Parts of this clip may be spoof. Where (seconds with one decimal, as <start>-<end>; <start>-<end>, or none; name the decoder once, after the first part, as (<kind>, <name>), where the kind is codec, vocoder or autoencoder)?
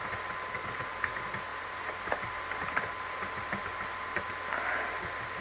1.5-4.3 (vocoder, BigVGAN v2)